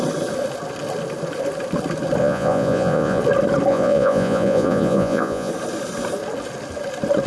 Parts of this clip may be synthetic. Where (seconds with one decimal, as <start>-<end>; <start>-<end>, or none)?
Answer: 2.2-3.2; 3.7-5.5

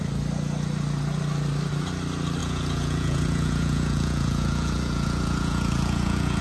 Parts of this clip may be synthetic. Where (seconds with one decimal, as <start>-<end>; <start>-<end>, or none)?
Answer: 2.4-6.4

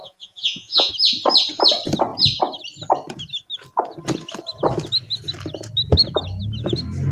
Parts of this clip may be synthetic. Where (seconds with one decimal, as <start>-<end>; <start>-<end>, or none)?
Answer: 0.0-0.9

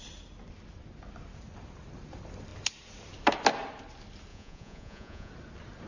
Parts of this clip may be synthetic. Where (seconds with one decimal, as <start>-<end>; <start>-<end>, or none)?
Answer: 4.3-5.3